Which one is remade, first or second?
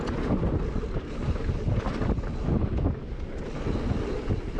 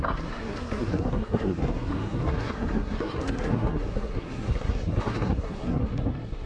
second